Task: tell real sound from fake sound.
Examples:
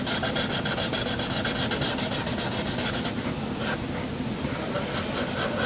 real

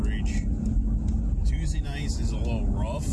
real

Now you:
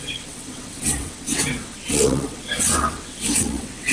fake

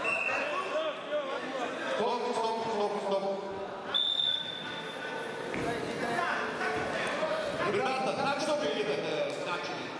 real